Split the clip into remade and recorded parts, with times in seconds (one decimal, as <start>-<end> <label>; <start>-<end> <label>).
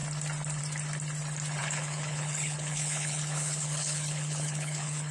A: 0.0-1.6 recorded; 1.6-5.1 remade